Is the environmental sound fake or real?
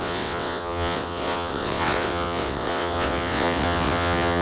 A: fake